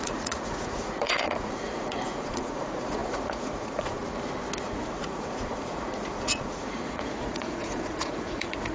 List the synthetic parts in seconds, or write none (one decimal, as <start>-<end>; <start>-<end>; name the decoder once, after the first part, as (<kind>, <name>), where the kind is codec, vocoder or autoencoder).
0.0-4.0 (vocoder, Vocos); 4.6-8.7